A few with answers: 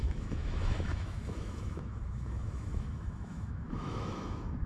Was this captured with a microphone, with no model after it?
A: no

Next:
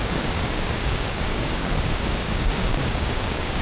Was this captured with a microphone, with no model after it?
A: no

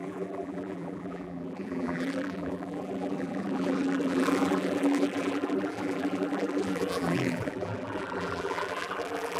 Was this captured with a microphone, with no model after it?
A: no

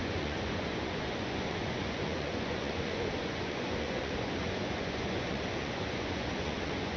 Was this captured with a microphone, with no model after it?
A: no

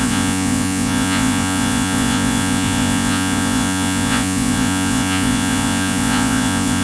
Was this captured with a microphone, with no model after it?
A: no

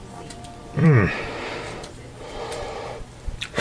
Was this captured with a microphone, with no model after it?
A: no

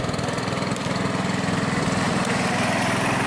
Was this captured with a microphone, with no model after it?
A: yes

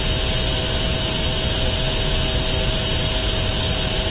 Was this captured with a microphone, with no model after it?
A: yes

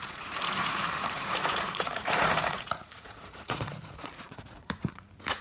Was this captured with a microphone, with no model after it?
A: no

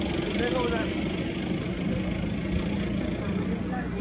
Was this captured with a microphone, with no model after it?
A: yes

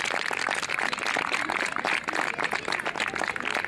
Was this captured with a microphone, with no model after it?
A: yes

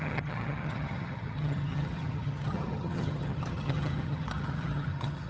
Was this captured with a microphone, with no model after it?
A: no